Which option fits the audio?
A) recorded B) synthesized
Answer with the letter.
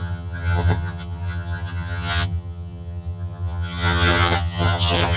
B